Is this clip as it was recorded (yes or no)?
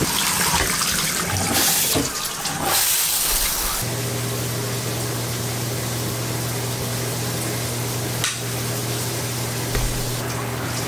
yes